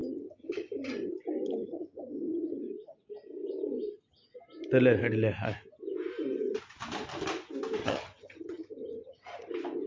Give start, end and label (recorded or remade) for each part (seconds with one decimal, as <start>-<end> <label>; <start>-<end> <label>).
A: 0.0-1.1 remade; 1.1-1.6 recorded; 1.6-2.6 remade; 2.6-7.8 recorded; 7.8-9.5 remade; 9.5-9.9 recorded